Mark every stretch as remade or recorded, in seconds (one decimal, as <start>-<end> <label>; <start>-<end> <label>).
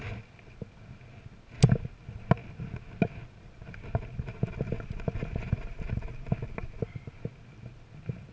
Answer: 0.0-8.3 recorded